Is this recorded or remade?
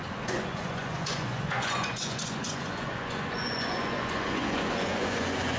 remade